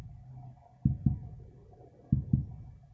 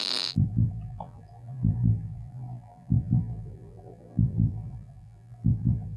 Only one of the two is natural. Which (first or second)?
first